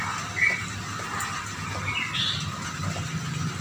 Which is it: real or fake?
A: real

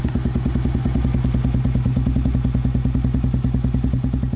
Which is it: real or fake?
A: real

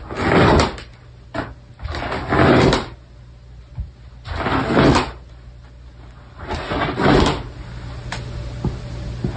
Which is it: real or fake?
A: real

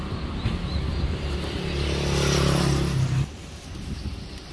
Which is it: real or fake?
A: real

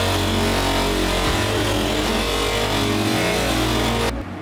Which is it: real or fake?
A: real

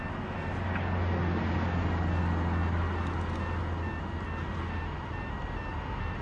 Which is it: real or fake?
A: real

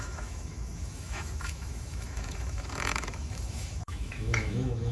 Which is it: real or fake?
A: fake